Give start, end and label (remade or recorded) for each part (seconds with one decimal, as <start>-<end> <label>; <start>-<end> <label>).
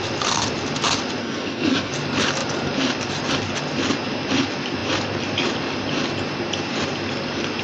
0.0-1.2 recorded; 1.2-1.9 remade; 1.9-7.6 recorded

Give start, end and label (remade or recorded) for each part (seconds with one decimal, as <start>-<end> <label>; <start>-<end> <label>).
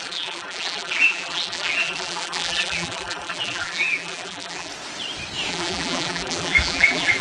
0.0-4.7 remade; 4.7-5.5 recorded; 5.5-7.2 remade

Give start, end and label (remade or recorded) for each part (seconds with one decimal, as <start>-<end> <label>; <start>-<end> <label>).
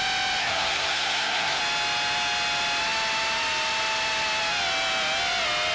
0.0-0.4 recorded; 0.4-1.6 remade; 1.6-5.7 recorded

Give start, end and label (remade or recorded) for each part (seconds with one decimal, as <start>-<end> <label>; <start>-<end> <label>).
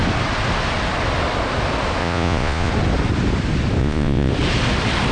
0.0-2.0 recorded; 2.0-2.7 remade; 2.7-3.8 recorded; 3.8-4.3 remade; 4.3-5.1 recorded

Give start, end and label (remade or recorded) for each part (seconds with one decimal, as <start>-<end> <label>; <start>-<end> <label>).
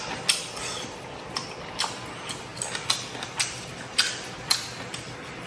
0.0-5.5 recorded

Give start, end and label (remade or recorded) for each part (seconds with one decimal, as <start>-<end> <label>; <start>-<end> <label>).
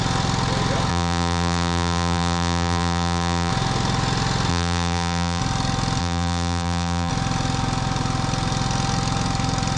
0.0-0.9 recorded; 0.9-3.5 remade; 3.5-4.5 recorded; 4.5-5.4 remade; 5.4-6.0 recorded; 6.0-7.1 remade; 7.1-9.8 recorded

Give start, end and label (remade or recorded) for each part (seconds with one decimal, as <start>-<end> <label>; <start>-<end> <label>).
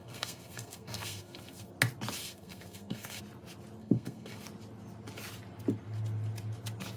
0.0-1.7 remade; 1.7-2.2 recorded; 2.2-3.2 remade; 3.2-3.8 recorded; 3.8-4.4 remade; 4.4-7.0 recorded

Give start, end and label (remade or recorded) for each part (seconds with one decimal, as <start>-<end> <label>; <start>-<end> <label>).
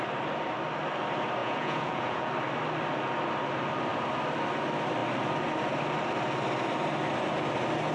0.0-1.4 recorded; 1.4-2.3 remade; 2.3-7.9 recorded